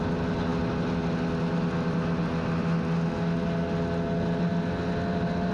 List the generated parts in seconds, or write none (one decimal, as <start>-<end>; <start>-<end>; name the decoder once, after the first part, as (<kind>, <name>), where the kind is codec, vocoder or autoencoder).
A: none